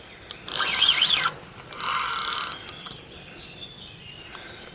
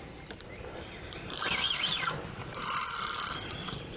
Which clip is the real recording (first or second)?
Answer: first